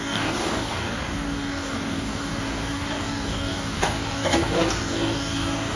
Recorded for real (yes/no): no